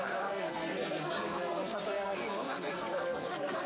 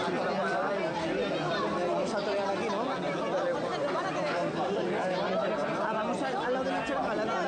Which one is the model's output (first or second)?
first